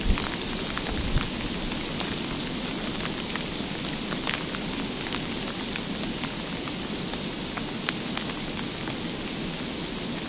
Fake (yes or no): no